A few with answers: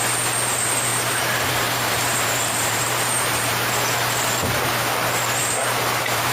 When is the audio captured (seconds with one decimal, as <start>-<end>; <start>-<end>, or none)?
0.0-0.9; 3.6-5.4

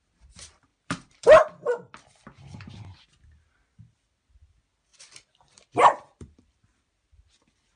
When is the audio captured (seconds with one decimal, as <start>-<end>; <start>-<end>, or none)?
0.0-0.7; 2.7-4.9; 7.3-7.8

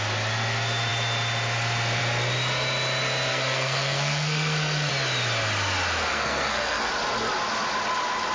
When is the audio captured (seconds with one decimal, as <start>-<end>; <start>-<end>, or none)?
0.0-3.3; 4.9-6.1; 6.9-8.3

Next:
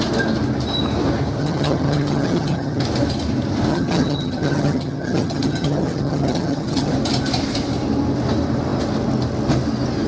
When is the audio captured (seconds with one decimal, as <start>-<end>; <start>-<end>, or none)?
0.0-1.4; 2.8-3.7; 6.9-10.1